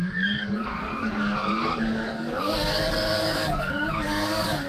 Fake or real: fake